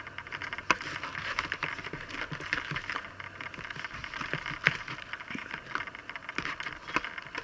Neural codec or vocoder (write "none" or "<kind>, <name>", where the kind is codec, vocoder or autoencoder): none